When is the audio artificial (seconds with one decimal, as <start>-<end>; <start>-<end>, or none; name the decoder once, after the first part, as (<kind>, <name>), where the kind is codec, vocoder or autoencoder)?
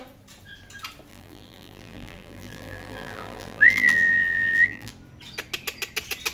1.1-4.9 (vocoder, BigVGAN v2)